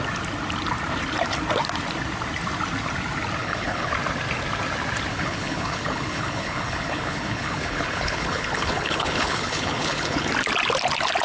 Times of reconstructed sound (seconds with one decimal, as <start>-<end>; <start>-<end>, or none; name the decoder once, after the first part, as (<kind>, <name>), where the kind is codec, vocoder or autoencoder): 3.4-3.9 (codec, HILCodec); 5.1-10.3